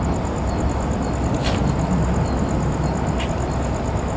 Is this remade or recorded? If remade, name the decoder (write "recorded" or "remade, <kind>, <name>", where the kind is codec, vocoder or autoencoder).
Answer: recorded